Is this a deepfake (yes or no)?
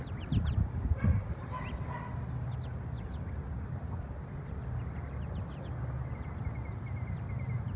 no